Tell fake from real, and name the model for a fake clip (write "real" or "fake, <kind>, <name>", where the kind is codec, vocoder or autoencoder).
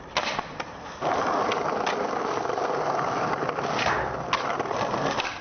real